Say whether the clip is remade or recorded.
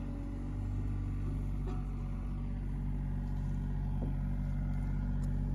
recorded